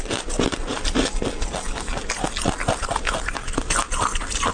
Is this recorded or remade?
recorded